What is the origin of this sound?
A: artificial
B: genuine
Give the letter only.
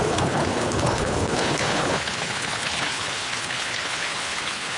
A